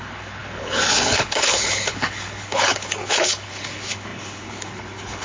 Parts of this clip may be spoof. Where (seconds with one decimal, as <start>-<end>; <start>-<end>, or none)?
0.0-5.2